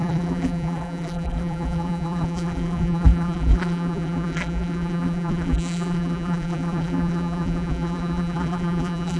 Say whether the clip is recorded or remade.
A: remade